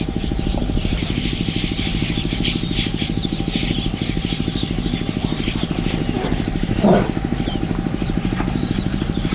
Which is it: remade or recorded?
recorded